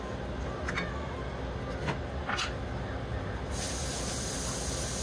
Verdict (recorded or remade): recorded